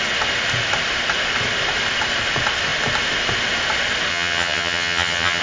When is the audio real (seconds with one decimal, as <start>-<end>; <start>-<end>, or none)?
0.0-4.1